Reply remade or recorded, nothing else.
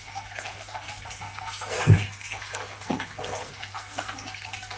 remade